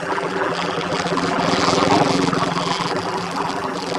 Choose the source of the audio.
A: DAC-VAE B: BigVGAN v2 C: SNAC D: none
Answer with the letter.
B